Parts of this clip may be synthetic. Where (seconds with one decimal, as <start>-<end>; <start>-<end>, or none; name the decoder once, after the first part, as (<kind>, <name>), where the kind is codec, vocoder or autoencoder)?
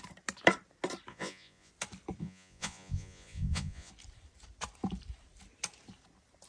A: 1.1-1.7 (vocoder, Vocos); 2.2-3.9